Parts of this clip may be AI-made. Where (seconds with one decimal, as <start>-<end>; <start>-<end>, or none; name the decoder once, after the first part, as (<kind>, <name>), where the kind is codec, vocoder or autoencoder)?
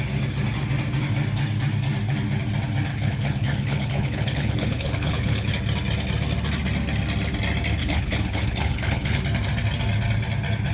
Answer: 2.9-5.5 (codec, HILCodec); 7.8-9.2